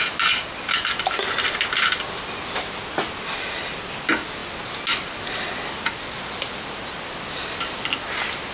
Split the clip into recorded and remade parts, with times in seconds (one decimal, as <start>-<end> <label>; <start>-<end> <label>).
0.0-8.5 recorded